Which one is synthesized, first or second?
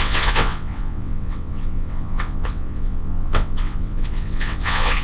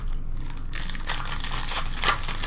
first